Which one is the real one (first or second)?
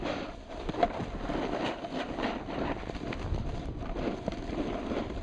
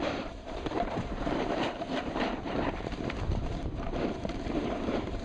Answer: first